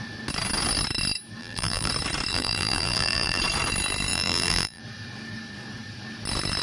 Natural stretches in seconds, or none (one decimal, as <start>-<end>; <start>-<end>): 0.0-1.4; 1.9-2.3; 3.4-4.1; 4.8-6.6